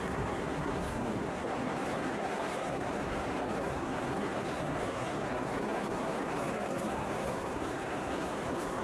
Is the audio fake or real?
fake